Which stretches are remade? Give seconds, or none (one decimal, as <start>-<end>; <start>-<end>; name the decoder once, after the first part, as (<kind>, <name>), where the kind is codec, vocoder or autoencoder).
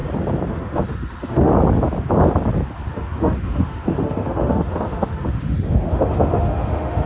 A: 0.5-1.5 (autoencoder, DAC-VAE); 2.9-7.1